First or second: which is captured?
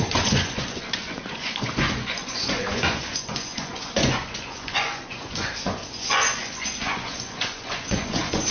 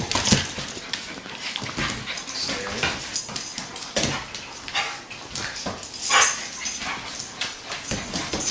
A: second